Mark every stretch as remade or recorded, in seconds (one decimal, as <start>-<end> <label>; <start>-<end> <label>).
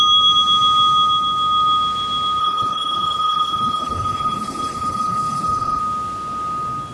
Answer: 0.0-2.4 recorded; 2.4-5.8 remade; 5.8-6.9 recorded